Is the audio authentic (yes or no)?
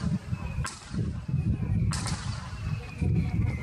no